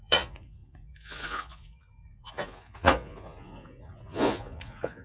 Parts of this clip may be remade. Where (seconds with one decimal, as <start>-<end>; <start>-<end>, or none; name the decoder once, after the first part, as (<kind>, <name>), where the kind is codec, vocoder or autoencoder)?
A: 0.0-5.0 (vocoder, Vocos)